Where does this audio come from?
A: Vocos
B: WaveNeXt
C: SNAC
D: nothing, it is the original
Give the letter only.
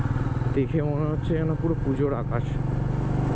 D